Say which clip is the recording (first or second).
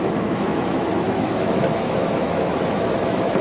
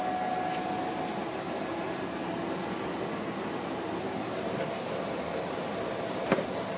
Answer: second